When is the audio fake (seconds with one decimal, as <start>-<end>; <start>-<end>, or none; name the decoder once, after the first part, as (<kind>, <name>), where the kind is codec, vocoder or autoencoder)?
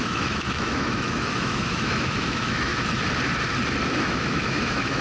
0.0-2.7 (autoencoder, DAC-VAE); 4.0-5.0